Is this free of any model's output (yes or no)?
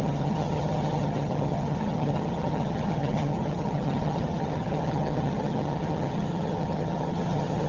no